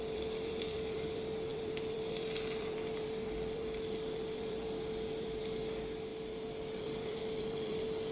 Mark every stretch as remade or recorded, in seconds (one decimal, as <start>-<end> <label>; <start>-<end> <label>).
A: 0.0-8.1 remade